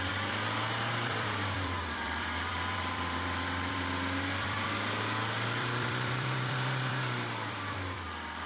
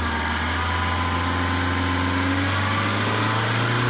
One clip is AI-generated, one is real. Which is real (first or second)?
second